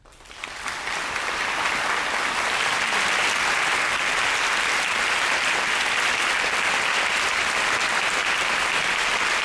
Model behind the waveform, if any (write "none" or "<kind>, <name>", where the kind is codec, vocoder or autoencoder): none